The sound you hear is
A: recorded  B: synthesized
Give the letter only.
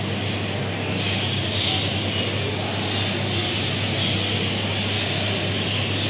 A